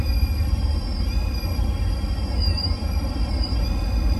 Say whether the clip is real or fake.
real